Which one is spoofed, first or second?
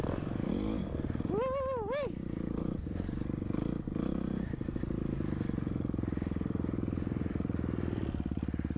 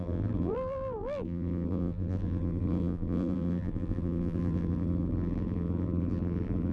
second